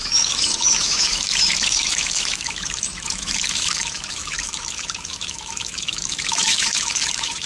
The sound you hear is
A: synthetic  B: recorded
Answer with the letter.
A